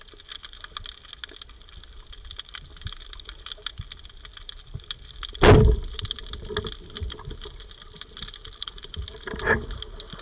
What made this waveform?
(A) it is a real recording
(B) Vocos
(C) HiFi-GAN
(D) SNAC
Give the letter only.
A